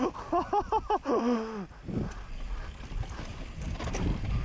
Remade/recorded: recorded